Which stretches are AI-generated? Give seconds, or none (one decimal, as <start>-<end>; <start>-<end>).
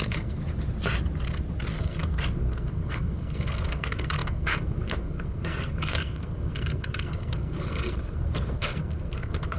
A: 0.0-0.4; 1.8-9.6